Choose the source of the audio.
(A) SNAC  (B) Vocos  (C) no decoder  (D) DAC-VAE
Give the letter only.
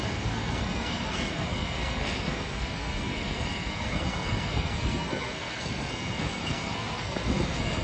A